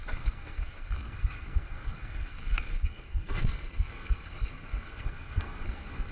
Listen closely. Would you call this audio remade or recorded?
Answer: remade